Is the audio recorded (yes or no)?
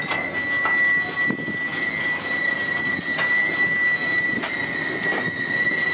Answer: yes